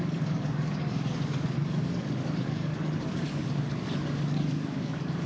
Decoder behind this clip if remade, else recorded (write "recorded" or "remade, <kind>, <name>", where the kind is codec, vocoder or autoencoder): remade, codec, DAC